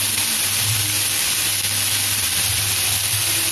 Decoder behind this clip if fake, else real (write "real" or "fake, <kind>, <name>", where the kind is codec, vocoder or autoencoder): real